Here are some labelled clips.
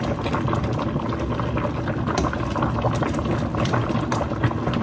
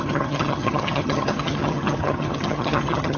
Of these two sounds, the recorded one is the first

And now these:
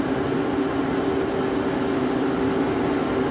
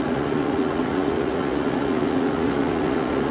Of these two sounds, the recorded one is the first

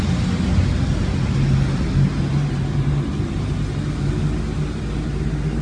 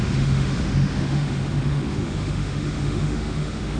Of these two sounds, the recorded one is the first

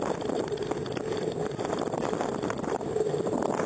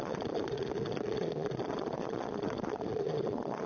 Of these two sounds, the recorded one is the first